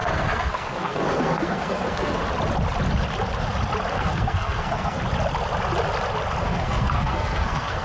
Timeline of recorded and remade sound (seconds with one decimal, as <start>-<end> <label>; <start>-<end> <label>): 0.0-2.2 remade; 2.2-3.9 recorded; 3.9-5.0 remade; 5.0-6.4 recorded; 6.4-7.8 remade